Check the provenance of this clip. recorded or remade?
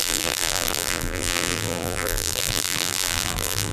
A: remade